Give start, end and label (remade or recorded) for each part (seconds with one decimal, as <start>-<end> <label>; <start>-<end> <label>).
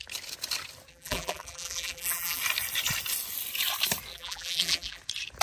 0.0-0.9 recorded; 0.9-2.4 remade; 2.4-4.1 recorded; 4.1-5.0 remade; 5.0-5.4 recorded